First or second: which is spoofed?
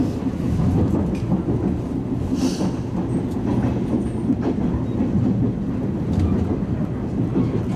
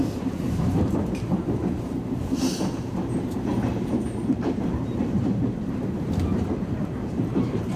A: second